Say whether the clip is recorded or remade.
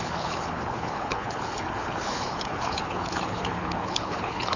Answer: remade